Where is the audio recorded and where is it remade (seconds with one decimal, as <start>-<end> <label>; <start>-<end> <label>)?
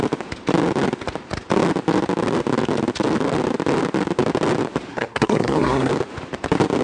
0.0-4.9 recorded; 4.9-5.9 remade; 5.9-6.8 recorded